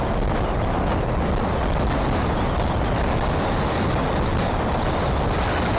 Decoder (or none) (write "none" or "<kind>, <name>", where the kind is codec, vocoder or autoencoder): none